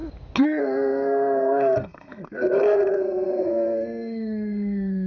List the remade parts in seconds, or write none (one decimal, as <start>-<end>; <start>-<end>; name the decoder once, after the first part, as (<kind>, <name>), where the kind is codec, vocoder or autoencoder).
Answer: 0.6-5.1 (codec, SNAC)

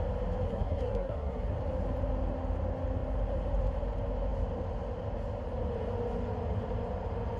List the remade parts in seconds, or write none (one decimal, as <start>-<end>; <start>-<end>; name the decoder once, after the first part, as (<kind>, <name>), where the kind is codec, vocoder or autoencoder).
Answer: 0.5-1.5 (codec, SNAC)